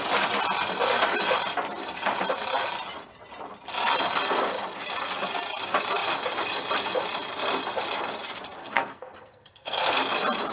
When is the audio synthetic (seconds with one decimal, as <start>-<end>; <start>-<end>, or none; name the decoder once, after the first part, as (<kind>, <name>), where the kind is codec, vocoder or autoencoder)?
8.6-10.0 (codec, SNAC)